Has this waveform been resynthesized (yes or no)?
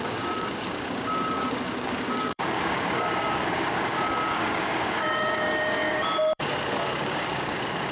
yes